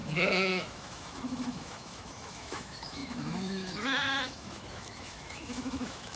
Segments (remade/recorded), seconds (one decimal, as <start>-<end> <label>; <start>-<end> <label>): 0.0-6.2 remade